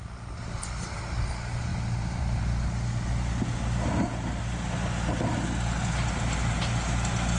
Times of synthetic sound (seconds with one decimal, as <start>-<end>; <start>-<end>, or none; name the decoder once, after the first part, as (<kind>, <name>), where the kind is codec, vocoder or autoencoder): none